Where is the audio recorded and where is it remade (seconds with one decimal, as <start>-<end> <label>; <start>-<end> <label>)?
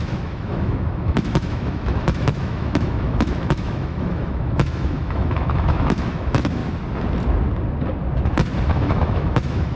0.0-6.6 remade; 6.6-8.7 recorded; 8.7-9.8 remade